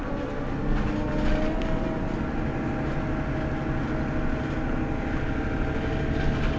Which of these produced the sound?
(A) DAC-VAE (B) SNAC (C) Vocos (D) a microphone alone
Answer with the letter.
D